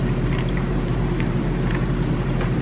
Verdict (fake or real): fake